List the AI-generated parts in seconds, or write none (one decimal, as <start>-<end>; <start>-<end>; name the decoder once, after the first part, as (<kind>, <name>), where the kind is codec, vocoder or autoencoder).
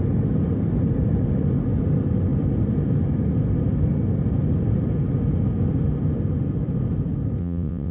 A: 7.4-7.9 (vocoder, WaveNeXt)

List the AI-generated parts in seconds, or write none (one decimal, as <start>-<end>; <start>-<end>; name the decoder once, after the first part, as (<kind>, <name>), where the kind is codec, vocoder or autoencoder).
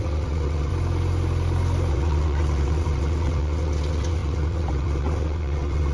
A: 0.0-0.7 (vocoder, WaveNeXt); 1.9-5.9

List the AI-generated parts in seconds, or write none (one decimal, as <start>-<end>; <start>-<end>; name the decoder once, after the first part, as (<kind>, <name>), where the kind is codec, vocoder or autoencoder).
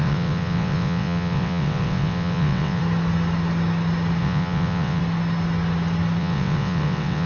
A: 0.0-2.8 (vocoder, WaveNeXt); 4.2-5.0; 6.2-7.3